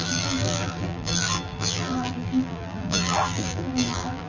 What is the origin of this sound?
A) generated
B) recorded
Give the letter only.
A